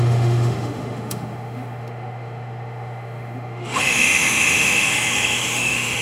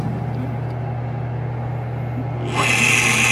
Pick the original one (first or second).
second